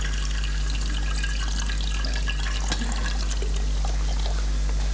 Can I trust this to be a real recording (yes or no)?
yes